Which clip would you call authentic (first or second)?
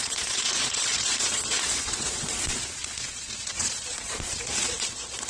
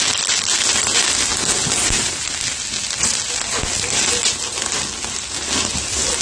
second